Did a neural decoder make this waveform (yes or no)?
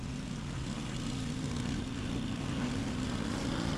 no